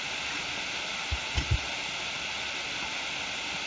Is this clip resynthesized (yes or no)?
no